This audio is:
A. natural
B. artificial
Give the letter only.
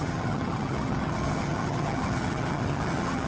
B